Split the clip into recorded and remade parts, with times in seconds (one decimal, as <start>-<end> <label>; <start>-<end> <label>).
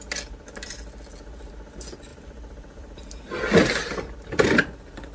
0.0-2.1 recorded; 2.1-3.0 remade; 3.0-5.1 recorded